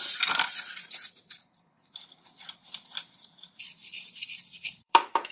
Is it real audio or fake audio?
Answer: fake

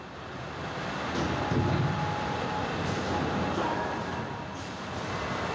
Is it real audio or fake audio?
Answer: fake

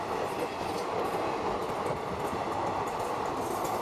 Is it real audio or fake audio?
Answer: real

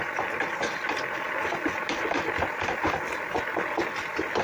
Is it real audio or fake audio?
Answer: real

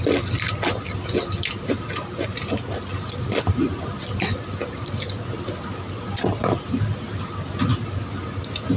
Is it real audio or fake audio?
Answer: real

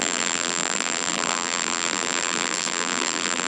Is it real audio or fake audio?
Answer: fake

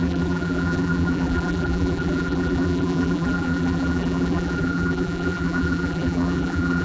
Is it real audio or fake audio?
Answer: fake